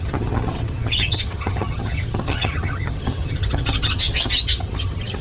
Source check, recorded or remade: remade